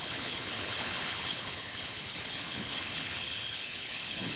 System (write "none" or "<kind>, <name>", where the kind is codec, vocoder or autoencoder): codec, HILCodec